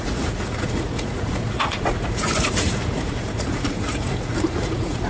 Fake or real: fake